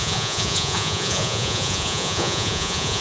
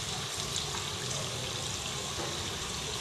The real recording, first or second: second